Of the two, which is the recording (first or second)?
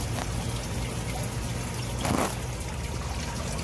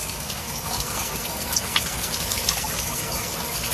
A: first